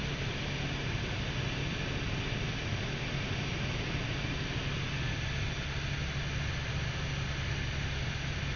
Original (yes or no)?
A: yes